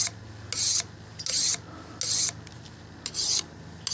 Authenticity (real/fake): real